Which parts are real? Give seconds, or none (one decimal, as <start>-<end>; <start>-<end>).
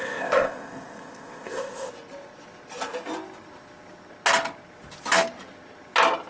1.9-6.3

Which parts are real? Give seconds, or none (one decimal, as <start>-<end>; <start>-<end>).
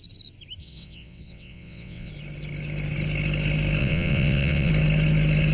0.0-0.6; 2.1-3.8; 4.7-5.5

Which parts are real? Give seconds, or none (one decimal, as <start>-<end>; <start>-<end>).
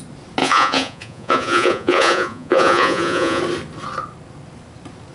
0.0-0.4; 3.4-5.1